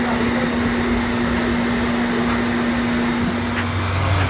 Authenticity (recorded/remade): recorded